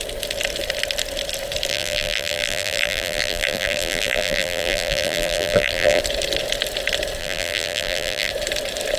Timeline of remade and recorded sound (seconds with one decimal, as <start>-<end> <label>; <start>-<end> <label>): 0.0-1.7 recorded; 1.7-6.0 remade; 6.0-7.2 recorded; 7.2-8.3 remade; 8.3-9.0 recorded